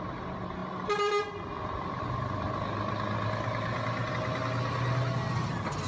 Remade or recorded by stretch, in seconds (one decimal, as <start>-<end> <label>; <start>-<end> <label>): 0.0-5.9 recorded